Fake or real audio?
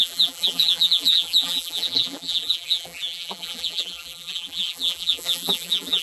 fake